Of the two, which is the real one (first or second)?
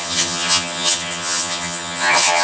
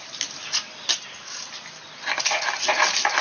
second